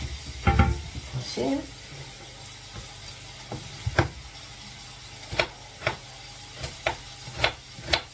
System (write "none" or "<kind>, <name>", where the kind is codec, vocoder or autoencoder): none